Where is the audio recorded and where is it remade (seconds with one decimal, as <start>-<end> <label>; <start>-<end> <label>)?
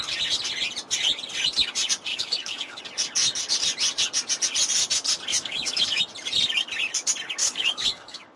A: 0.0-2.1 recorded; 2.1-2.8 remade; 2.8-5.3 recorded; 5.3-6.0 remade; 6.0-7.4 recorded; 7.4-8.4 remade